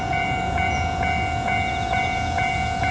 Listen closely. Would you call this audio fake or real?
fake